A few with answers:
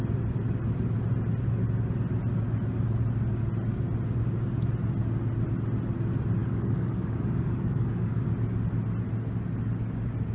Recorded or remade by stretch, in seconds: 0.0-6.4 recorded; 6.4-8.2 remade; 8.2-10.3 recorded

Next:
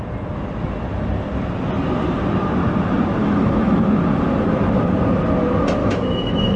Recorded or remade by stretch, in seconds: 0.0-3.2 recorded; 3.2-3.8 remade; 3.8-5.8 recorded; 5.8-6.6 remade

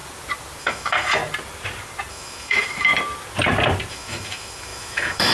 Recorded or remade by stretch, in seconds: 0.0-0.6 recorded; 0.6-1.2 remade; 1.2-2.1 recorded; 2.1-2.9 remade; 2.9-3.9 recorded; 3.9-5.3 remade

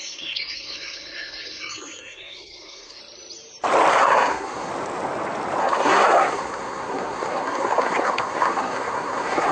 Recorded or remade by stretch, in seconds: 0.0-3.0 remade; 3.0-3.9 recorded; 3.9-4.7 remade; 4.7-5.6 recorded; 5.6-9.5 remade